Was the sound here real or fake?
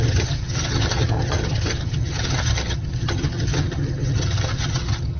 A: fake